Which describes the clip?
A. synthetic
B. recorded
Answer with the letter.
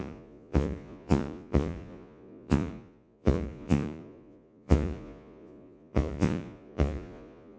A